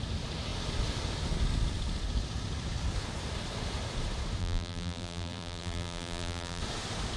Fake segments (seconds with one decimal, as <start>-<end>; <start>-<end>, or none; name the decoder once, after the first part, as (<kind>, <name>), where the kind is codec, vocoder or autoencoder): 4.4-6.6 (vocoder, BigVGAN v2)